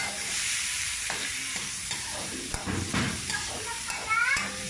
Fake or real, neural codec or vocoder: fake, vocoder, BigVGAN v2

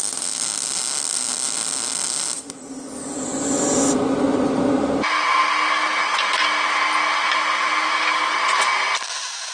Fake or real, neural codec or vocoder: real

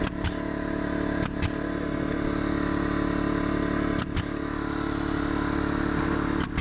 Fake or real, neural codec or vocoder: real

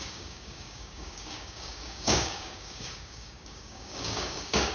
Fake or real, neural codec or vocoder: fake, codec, DAC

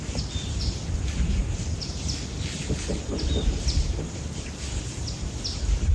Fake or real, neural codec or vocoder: real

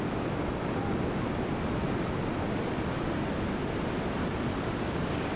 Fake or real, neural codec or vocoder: real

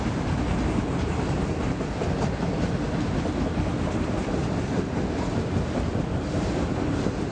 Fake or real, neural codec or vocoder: real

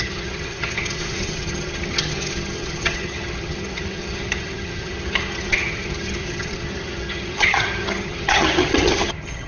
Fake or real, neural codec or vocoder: fake, vocoder, HiFi-GAN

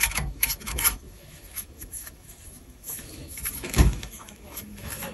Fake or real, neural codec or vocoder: fake, autoencoder, DAC-VAE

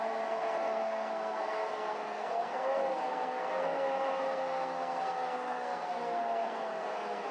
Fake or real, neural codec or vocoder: fake, codec, SNAC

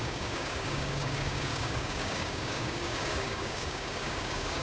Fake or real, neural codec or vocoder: fake, codec, DAC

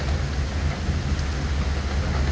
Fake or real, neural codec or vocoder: real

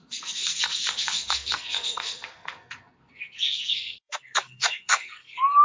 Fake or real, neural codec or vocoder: fake, codec, SNAC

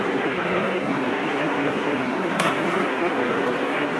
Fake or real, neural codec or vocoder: fake, codec, SNAC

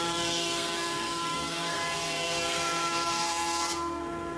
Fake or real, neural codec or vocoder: fake, codec, SNAC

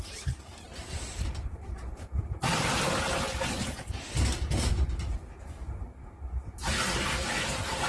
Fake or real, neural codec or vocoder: fake, vocoder, BigVGAN v2